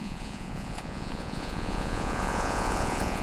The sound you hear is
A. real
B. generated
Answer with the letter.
B